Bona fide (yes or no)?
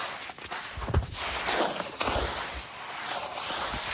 yes